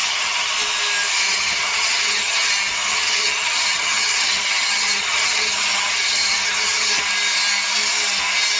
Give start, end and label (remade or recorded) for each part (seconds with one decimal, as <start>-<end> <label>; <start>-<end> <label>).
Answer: 0.0-0.5 remade; 0.5-1.3 recorded; 1.3-2.5 remade; 2.5-2.9 recorded; 2.9-7.0 remade; 7.0-8.6 recorded